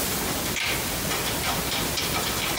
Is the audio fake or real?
real